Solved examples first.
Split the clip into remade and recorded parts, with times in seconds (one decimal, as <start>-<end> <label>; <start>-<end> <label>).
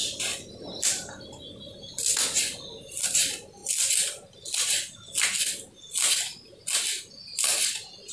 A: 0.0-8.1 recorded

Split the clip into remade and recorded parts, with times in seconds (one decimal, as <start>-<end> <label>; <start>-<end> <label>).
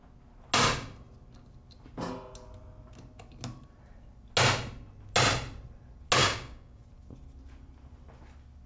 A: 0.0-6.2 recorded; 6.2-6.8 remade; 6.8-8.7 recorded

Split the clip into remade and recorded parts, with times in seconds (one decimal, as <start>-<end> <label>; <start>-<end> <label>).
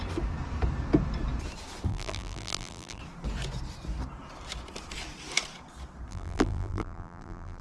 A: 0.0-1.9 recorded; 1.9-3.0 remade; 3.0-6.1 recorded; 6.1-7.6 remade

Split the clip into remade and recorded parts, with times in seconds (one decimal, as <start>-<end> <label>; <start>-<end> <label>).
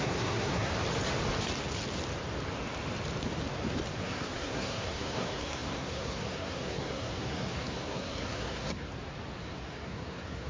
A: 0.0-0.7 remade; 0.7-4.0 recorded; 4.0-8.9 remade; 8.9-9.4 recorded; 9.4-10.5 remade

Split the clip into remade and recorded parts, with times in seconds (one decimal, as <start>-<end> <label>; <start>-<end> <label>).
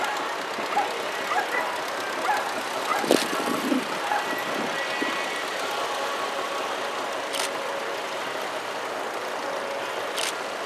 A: 0.0-10.7 recorded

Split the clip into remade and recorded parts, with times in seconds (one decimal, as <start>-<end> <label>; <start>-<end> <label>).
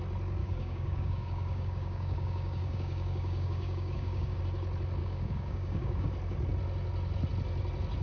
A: 0.0-0.4 recorded; 0.4-4.4 remade; 4.4-5.0 recorded; 5.0-6.1 remade; 6.1-8.0 recorded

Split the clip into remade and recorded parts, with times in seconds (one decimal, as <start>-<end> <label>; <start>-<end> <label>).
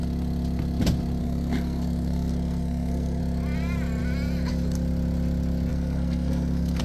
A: 0.0-1.2 recorded; 1.2-3.2 remade; 3.2-5.7 recorded; 5.7-6.8 remade